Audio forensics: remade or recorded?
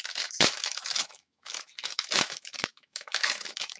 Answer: remade